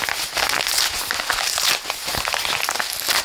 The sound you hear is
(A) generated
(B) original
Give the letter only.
B